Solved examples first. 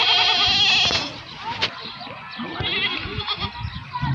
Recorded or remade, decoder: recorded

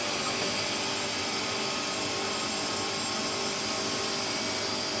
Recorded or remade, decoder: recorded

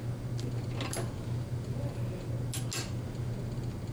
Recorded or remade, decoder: recorded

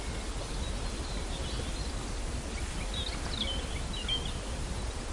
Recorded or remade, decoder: recorded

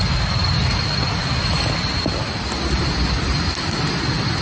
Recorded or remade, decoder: recorded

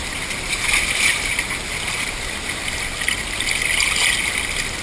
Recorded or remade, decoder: recorded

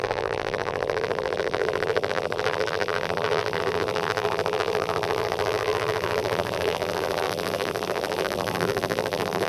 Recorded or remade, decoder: remade, vocoder, BigVGAN v2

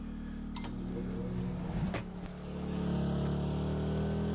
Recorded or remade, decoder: recorded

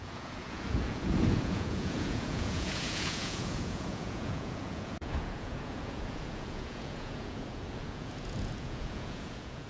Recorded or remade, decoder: remade, vocoder, Vocos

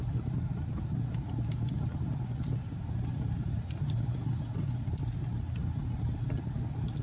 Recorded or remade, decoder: recorded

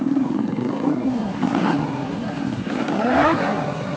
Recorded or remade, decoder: remade, codec, SNAC